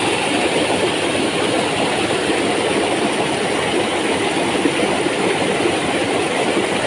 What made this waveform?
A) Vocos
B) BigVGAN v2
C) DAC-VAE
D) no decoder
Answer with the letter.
D